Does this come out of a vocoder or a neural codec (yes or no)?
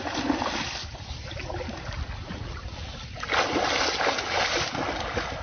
no